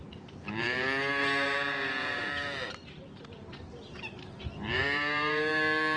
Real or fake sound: fake